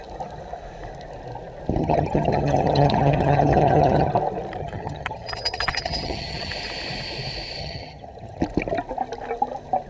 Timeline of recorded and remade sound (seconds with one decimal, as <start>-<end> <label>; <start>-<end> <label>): 0.0-1.8 recorded; 1.8-4.1 remade; 4.1-4.6 recorded; 4.6-6.5 remade; 6.5-7.6 recorded; 7.6-8.4 remade; 8.4-9.9 recorded